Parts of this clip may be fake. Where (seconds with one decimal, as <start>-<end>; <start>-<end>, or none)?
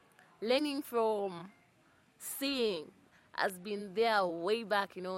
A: 0.0-0.6; 1.4-3.1; 3.8-4.3